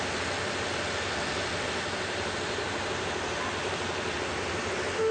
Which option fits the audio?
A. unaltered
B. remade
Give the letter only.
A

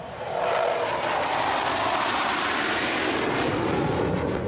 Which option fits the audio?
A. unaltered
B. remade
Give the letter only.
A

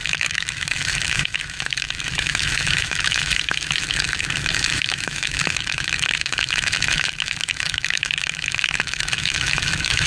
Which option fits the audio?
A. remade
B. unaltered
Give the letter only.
A